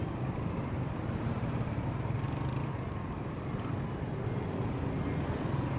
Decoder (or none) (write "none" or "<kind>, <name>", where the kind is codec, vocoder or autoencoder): none